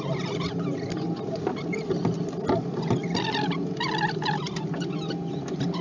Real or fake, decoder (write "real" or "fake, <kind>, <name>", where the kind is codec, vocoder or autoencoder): real